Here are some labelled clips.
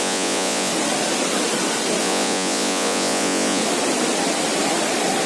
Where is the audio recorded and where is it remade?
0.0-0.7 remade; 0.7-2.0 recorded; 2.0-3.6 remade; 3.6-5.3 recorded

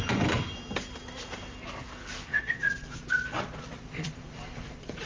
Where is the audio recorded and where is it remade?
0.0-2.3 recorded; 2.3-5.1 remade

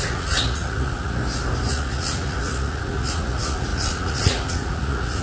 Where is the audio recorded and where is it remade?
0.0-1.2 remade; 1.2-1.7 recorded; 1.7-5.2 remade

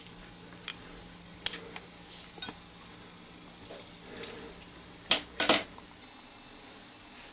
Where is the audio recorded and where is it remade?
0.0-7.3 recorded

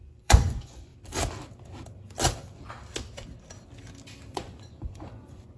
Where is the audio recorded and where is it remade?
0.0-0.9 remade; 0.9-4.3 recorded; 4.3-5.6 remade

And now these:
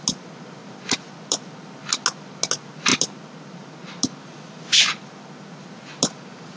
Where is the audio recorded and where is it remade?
0.0-6.6 recorded

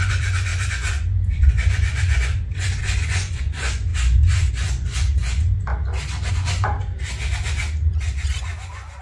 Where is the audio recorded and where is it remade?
0.0-5.7 remade; 5.7-6.3 recorded; 6.3-6.8 remade; 6.8-7.9 recorded; 7.9-9.0 remade

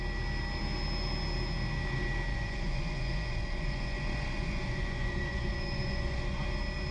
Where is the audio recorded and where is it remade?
0.0-2.3 recorded; 2.3-6.4 remade; 6.4-6.9 recorded